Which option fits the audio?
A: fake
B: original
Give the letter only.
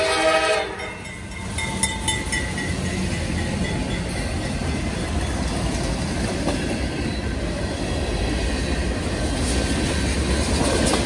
B